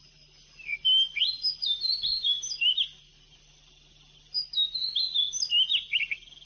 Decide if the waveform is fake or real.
real